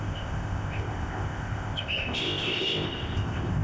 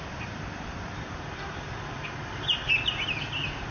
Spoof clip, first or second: first